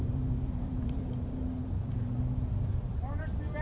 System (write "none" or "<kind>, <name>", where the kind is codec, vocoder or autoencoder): vocoder, BigVGAN v2